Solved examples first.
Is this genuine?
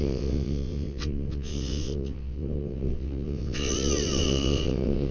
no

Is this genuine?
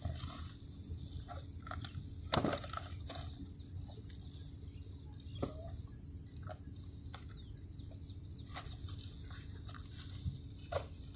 yes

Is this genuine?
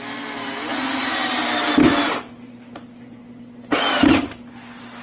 yes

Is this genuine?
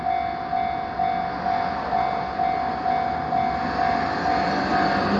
yes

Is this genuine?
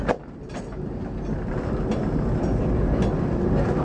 yes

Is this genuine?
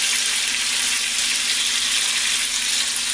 yes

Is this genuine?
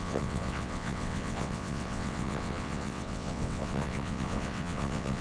no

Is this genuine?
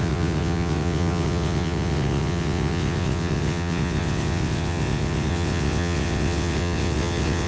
no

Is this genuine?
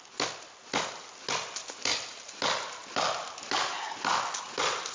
yes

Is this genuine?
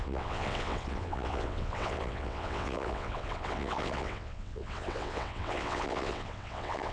no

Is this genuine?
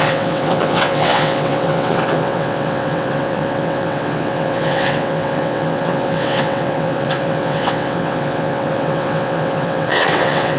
no